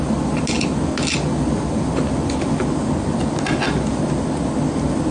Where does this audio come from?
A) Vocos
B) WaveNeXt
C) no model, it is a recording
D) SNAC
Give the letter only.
C